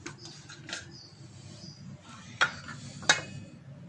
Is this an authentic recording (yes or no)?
yes